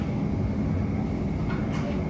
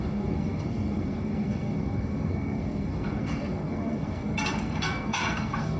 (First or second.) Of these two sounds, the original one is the first